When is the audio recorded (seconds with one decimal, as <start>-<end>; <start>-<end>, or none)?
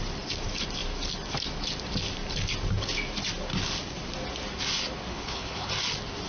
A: 0.0-5.1; 5.7-6.3